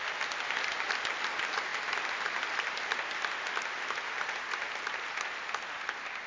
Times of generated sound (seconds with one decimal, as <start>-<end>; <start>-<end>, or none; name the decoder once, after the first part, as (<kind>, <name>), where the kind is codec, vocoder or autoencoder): none